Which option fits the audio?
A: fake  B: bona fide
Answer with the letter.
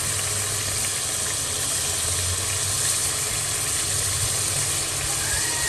B